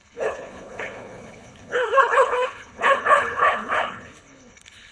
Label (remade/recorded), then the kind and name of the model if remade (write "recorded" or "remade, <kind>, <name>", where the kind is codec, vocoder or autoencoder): remade, codec, HILCodec